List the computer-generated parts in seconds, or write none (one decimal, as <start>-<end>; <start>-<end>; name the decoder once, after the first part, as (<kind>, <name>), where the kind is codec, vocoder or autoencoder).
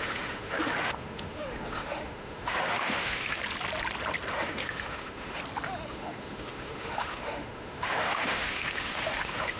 0.0-3.4 (autoencoder, DAC-VAE); 4.3-5.4; 5.9-9.6